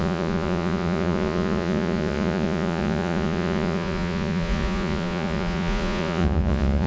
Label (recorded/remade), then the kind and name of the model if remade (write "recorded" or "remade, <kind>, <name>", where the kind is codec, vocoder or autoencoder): remade, vocoder, Vocos